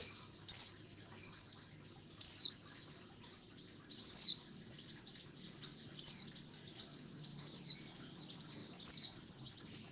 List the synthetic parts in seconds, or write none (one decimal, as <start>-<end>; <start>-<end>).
1.3-2.9; 5.7-6.2; 8.6-9.2